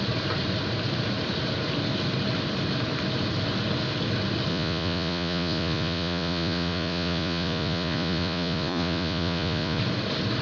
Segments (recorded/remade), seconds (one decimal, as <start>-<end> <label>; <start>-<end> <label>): 0.0-4.5 recorded; 4.5-9.8 remade; 9.8-10.4 recorded